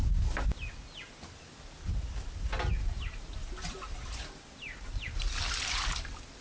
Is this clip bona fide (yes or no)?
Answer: yes